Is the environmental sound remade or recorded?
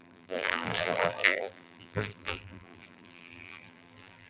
remade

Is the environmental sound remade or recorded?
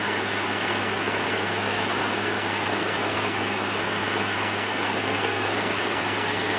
remade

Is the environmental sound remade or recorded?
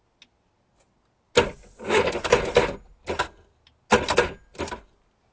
recorded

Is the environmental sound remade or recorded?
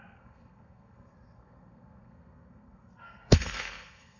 remade